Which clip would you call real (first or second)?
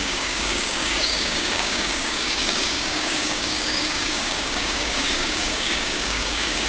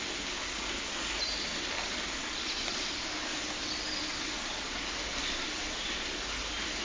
second